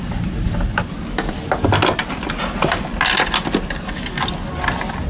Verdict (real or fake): real